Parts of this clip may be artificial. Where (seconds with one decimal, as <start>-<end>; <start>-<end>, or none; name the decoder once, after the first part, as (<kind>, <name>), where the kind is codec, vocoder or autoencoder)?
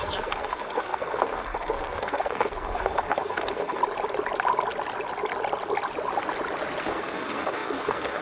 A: 0.0-3.8 (codec, SNAC); 6.8-8.2